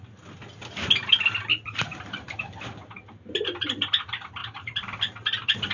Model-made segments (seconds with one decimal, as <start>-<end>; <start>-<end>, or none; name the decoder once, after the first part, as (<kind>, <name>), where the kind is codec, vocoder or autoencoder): 1.5-2.6 (vocoder, BigVGAN v2); 4.4-5.7